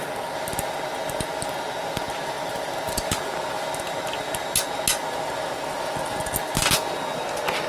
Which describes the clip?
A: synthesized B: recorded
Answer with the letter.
B